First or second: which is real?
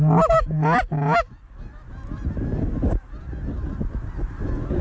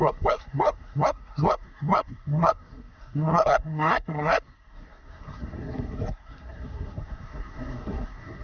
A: first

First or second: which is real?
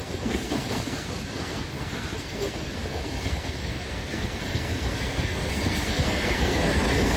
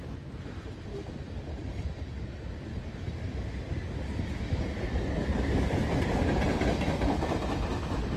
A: second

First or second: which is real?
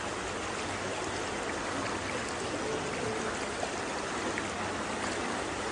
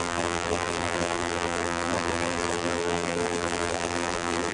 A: first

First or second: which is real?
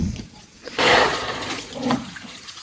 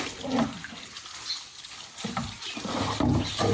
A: second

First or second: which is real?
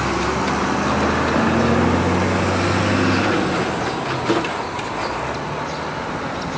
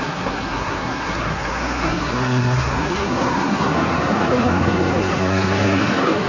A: first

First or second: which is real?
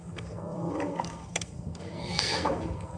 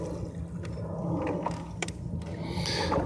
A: second